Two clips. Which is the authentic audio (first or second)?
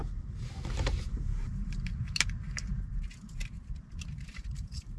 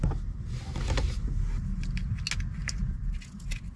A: second